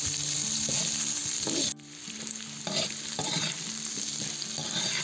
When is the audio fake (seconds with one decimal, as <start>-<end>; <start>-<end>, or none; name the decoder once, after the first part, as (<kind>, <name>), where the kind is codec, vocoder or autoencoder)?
1.2-4.2 (vocoder, BigVGAN v2)